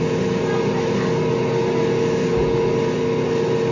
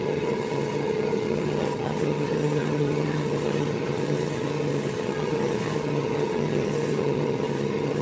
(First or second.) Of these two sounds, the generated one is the second